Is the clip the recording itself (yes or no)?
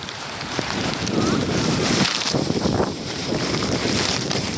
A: no